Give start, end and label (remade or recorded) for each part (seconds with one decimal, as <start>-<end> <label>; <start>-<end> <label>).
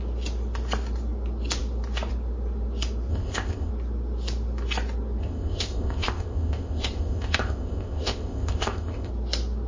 0.0-3.1 recorded; 3.1-3.7 remade; 3.7-5.2 recorded; 5.2-9.1 remade; 9.1-9.7 recorded